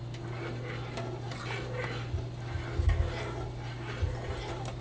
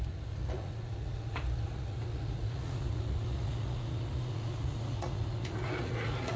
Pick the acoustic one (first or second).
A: first